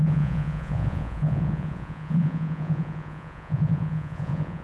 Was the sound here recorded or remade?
remade